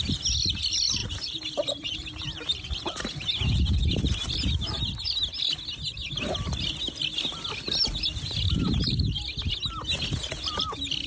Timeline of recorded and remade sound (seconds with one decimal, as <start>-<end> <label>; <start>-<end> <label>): 0.0-1.0 recorded; 1.0-4.1 remade; 4.1-11.1 recorded